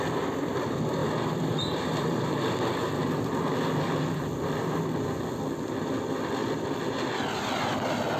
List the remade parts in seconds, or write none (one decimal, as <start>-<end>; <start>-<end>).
1.0-2.4